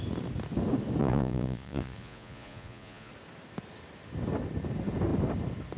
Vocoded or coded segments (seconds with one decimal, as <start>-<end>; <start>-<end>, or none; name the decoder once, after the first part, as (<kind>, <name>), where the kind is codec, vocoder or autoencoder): 1.0-3.1 (vocoder, Vocos)